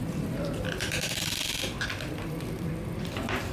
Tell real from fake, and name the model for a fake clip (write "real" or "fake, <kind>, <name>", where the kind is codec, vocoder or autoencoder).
fake, vocoder, BigVGAN v2